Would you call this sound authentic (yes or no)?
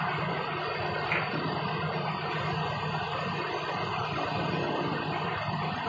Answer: yes